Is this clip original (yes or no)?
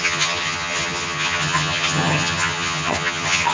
no